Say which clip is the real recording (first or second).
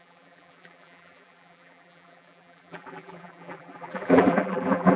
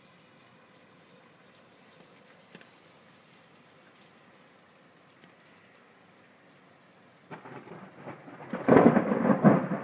second